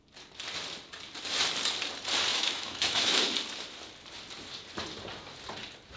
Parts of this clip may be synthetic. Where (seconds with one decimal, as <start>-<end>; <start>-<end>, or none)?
2.3-3.2